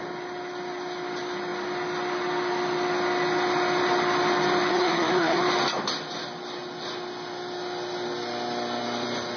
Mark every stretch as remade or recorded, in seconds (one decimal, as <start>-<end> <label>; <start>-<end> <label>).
0.0-4.7 recorded; 4.7-5.4 remade; 5.4-9.4 recorded